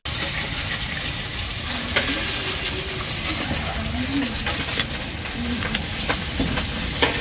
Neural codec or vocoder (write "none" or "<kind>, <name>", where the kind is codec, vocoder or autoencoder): none